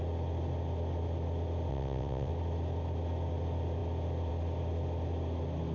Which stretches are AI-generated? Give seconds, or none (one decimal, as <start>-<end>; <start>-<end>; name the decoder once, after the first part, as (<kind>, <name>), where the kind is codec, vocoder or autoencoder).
1.7-2.3 (vocoder, WaveNeXt)